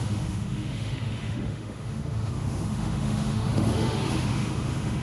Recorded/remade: remade